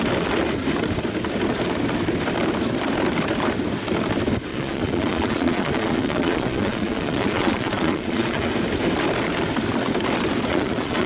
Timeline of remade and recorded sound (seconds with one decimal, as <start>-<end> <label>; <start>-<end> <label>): 0.0-4.5 recorded; 4.5-8.5 remade; 8.5-10.5 recorded; 10.5-11.1 remade